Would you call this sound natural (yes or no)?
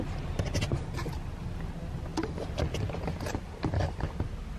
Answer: yes